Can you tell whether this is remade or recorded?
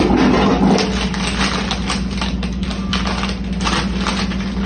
recorded